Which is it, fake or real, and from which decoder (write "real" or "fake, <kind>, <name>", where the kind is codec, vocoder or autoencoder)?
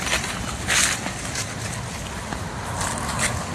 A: real